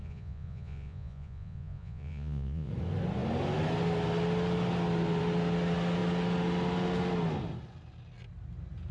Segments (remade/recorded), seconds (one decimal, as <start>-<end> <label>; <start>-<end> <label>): 0.0-2.7 remade; 2.7-8.9 recorded